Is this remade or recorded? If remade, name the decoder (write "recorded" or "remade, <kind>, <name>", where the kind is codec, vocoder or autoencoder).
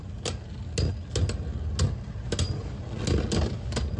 recorded